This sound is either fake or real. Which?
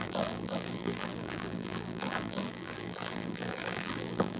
fake